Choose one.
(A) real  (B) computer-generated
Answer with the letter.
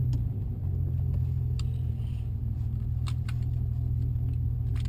A